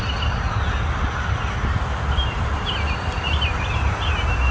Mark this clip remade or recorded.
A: recorded